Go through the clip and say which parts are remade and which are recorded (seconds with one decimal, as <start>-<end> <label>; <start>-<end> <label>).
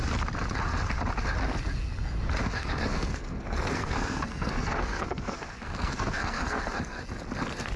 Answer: 0.0-2.4 recorded; 2.4-7.0 remade; 7.0-7.8 recorded